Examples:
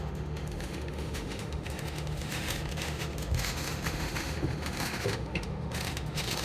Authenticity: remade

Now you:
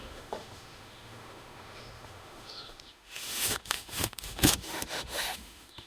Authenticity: remade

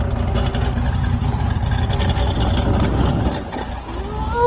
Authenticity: recorded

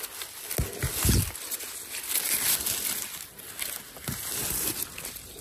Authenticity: recorded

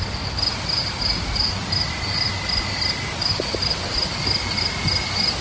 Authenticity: recorded